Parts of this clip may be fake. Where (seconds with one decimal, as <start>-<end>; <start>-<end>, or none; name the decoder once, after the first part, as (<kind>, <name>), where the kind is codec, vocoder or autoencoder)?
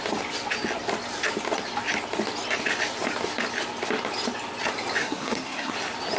5.0-5.7 (codec, SNAC)